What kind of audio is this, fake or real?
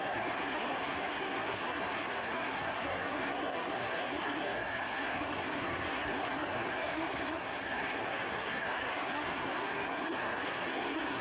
fake